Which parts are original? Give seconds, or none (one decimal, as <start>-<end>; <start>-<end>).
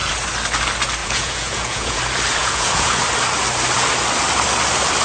0.0-1.0; 2.0-2.4; 3.0-5.0